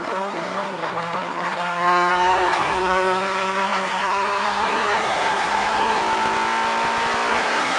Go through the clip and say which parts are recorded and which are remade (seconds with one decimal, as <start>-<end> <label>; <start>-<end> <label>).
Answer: 0.0-6.0 remade; 6.0-7.3 recorded; 7.3-7.8 remade